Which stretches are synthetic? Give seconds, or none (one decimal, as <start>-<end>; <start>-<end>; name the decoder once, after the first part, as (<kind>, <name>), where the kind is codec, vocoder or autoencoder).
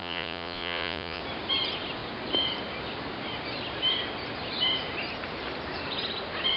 0.0-1.2 (vocoder, Vocos)